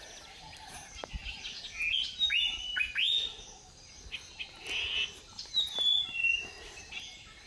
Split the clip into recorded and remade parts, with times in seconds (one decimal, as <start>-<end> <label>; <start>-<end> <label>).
0.0-7.5 recorded